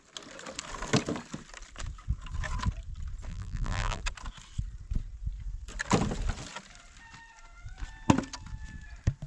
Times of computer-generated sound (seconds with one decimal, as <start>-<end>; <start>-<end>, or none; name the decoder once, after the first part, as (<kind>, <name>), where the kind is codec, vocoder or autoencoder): 3.3-4.0 (vocoder, BigVGAN v2)